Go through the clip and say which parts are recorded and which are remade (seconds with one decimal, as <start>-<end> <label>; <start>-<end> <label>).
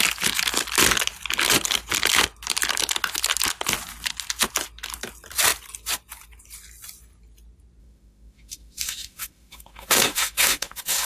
0.0-7.8 recorded; 7.8-11.1 remade